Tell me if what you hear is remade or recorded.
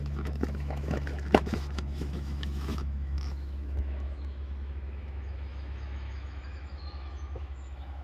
remade